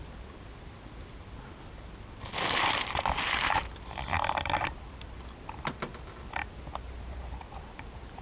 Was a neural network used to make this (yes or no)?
yes